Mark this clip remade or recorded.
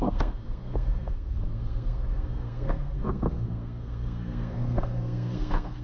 remade